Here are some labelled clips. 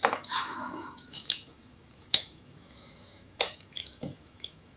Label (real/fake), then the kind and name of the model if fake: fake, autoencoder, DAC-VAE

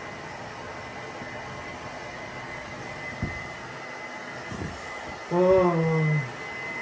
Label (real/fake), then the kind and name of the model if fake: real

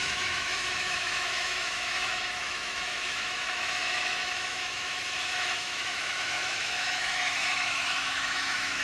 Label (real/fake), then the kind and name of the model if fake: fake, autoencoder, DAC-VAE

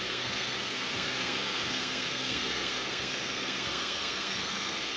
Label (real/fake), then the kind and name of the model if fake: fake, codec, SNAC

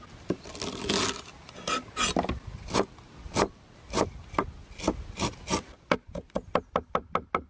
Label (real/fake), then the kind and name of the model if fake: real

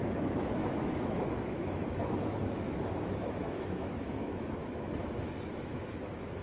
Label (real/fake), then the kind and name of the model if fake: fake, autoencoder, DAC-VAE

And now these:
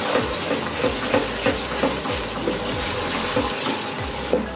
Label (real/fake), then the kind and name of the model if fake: real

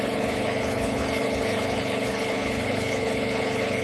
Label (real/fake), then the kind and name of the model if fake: fake, codec, HILCodec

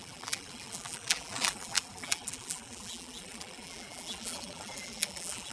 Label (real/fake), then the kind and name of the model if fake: fake, vocoder, BigVGAN v2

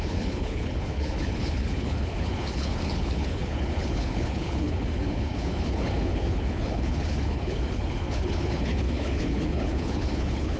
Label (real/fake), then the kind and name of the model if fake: fake, codec, HILCodec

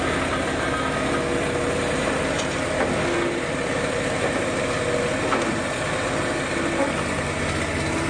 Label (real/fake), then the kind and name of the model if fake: real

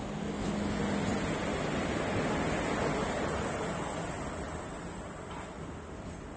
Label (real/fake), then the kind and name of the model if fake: real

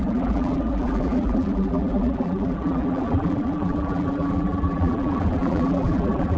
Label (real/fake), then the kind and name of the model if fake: fake, vocoder, BigVGAN v2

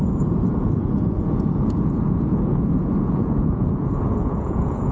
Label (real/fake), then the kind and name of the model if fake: fake, vocoder, Vocos